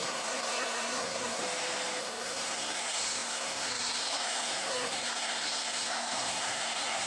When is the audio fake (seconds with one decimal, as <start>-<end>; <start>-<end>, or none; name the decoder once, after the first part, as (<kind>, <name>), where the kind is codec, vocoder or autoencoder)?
0.0-1.4 (codec, SNAC); 2.0-7.1